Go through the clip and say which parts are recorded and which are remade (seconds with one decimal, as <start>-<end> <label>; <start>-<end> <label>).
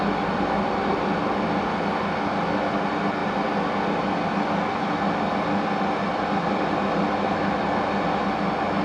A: 0.0-8.8 recorded